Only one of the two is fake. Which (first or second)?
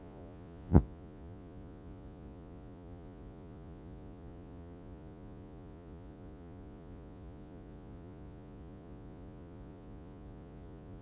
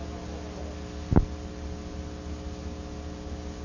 first